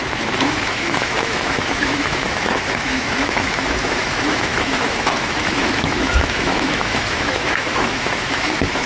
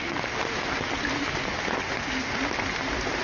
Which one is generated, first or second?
first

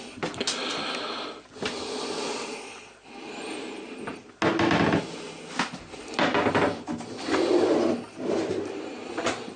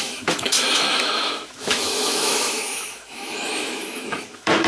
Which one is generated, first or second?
second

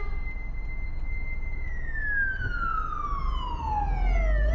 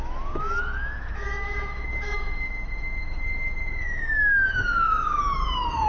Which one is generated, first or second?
second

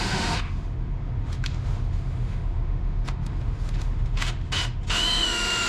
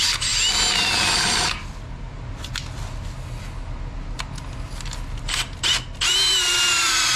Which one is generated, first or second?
first